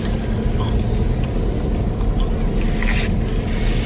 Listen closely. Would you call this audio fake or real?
real